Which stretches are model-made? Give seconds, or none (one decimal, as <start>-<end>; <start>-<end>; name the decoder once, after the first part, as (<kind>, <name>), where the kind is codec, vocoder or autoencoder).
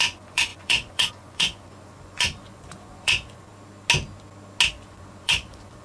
0.0-3.5 (vocoder, Vocos); 4.7-5.8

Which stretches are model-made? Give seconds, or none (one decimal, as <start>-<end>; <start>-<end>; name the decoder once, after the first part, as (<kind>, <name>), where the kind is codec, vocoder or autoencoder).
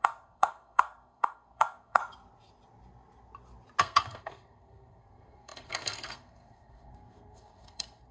0.0-2.0 (codec, SNAC); 3.8-8.1